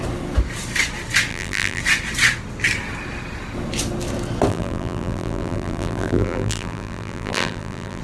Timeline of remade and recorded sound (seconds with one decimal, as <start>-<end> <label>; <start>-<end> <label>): 0.0-1.3 recorded; 1.3-1.8 remade; 1.8-4.5 recorded; 4.5-8.0 remade

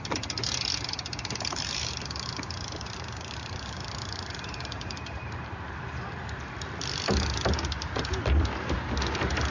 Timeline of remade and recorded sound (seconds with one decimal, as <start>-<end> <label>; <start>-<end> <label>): 0.0-1.1 recorded; 1.1-6.2 remade; 6.2-9.5 recorded

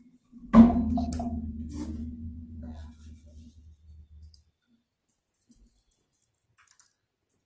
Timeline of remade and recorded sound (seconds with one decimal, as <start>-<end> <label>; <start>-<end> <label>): 0.0-2.0 recorded; 2.0-2.9 remade; 2.9-7.5 recorded

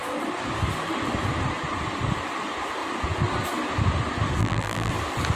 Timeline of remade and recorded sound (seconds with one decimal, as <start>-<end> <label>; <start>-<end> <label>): 0.0-4.4 recorded; 4.4-4.9 remade; 4.9-5.4 recorded

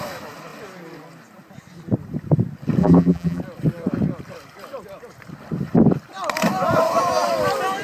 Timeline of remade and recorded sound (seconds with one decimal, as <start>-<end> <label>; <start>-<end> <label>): 0.0-2.8 recorded; 2.8-3.4 remade; 3.4-7.8 recorded

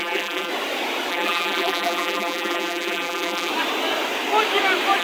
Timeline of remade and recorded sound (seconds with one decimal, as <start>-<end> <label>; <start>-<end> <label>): 0.0-0.5 remade; 0.5-1.1 recorded; 1.1-3.5 remade; 3.5-5.0 recorded

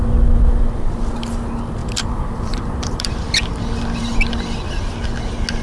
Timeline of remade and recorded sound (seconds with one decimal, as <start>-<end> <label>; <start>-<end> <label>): 0.0-1.8 recorded; 1.8-3.1 remade; 3.1-5.6 recorded